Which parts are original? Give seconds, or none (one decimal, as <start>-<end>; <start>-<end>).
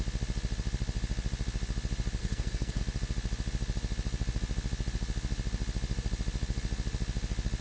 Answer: 0.0-2.2; 2.8-7.6